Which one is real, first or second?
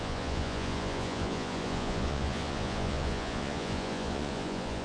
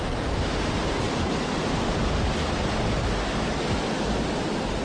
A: second